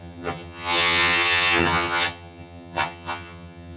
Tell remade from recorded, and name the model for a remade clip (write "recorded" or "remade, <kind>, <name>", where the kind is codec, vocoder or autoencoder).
remade, vocoder, HiFi-GAN